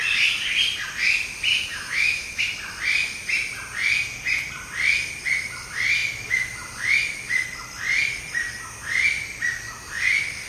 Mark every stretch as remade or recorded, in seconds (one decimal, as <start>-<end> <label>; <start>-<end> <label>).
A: 0.0-1.5 recorded; 1.5-2.4 remade; 2.4-10.5 recorded